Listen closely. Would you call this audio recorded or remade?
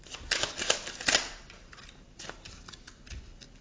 recorded